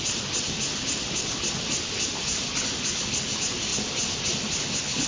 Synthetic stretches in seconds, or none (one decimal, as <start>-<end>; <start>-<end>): none

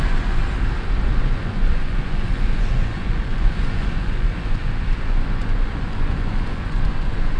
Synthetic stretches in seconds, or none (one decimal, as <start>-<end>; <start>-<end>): 0.0-0.4; 1.2-7.4

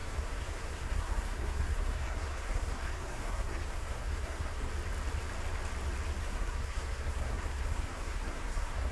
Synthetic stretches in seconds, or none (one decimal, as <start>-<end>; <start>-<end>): 0.0-4.7; 6.2-8.9

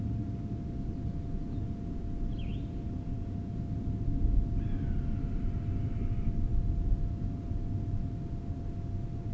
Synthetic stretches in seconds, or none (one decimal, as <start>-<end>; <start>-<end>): 2.5-3.5

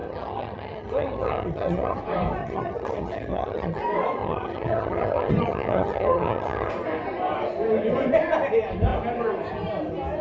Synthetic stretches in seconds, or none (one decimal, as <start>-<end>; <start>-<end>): 0.0-2.0; 2.4-3.8; 4.2-6.7